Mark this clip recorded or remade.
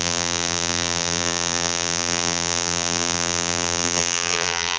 remade